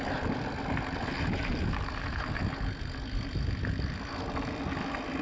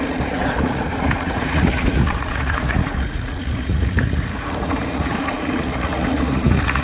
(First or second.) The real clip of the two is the first